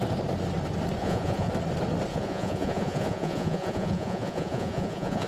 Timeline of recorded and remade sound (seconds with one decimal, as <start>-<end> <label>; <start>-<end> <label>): 0.0-1.0 recorded; 1.0-1.5 remade; 1.5-2.1 recorded; 2.1-5.3 remade